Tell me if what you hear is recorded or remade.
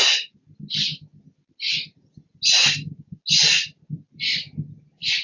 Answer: recorded